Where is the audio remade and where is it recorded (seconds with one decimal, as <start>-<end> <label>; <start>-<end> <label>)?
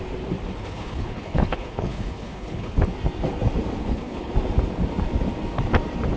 0.0-0.6 recorded; 0.6-2.7 remade; 2.7-3.8 recorded; 3.8-4.3 remade; 4.3-6.2 recorded